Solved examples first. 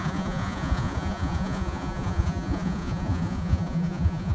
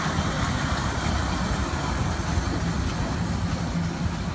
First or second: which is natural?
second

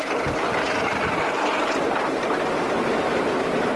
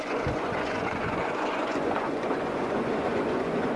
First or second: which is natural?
first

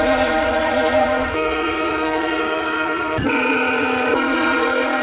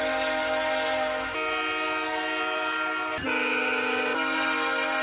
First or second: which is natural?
second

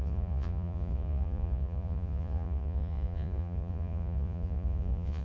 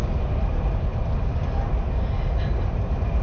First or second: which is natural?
second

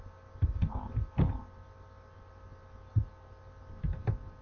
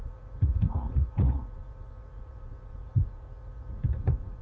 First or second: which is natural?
first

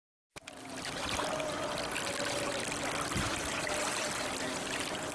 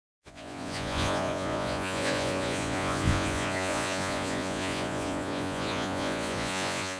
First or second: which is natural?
first